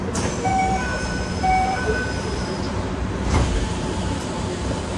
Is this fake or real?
fake